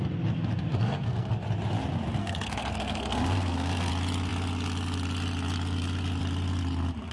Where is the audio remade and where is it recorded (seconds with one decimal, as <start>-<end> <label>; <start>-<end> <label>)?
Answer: 0.0-0.7 recorded; 0.7-1.3 remade; 1.3-2.2 recorded; 2.2-3.9 remade; 3.9-7.1 recorded